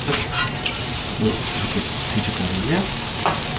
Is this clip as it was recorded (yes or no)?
no